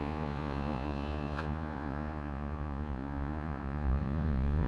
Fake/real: fake